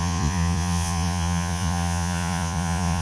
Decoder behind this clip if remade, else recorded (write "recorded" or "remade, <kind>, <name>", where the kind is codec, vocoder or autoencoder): remade, vocoder, Vocos